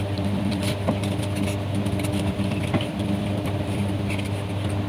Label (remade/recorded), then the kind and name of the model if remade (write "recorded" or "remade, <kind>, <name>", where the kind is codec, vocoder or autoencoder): remade, vocoder, BigVGAN v2